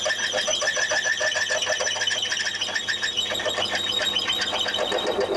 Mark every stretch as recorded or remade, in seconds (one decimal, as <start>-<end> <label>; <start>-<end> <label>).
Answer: 0.0-5.4 recorded